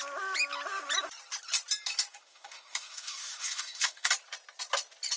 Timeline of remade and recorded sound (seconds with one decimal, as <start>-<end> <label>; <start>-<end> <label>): 0.0-2.1 recorded; 2.1-4.1 remade; 4.1-5.2 recorded